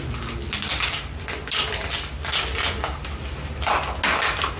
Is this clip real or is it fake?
real